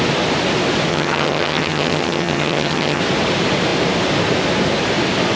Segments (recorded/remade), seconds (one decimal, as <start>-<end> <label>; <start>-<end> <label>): 0.0-0.9 recorded; 0.9-3.0 remade; 3.0-5.4 recorded